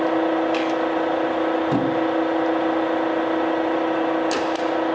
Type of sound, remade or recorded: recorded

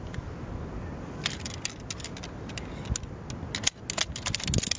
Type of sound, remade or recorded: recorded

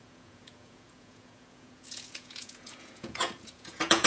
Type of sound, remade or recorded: remade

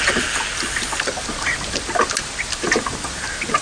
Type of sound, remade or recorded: recorded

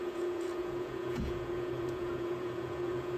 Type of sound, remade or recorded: remade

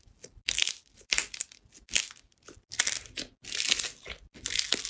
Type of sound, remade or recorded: recorded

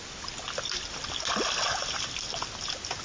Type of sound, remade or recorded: recorded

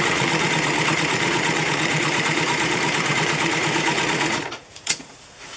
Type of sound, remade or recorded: remade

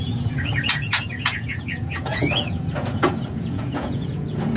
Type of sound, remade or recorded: remade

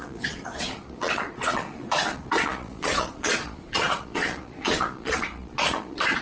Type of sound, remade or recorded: remade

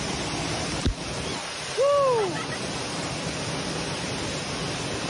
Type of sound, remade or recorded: recorded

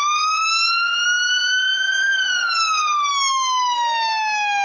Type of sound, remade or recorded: recorded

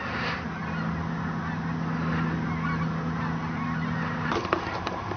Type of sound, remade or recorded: recorded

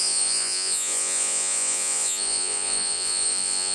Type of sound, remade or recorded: remade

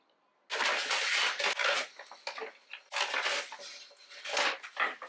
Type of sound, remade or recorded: recorded